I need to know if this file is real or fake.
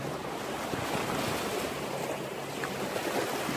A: real